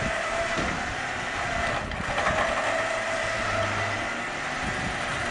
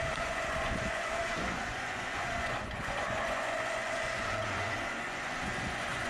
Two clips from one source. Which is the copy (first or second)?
second